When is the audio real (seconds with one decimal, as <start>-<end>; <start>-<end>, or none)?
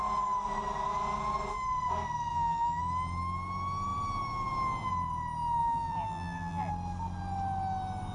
0.0-2.3; 2.8-5.6; 6.7-8.1